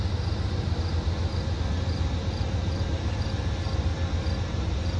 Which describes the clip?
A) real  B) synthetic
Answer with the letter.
A